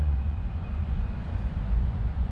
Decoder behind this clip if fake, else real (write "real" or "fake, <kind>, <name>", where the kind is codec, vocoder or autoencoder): fake, vocoder, Vocos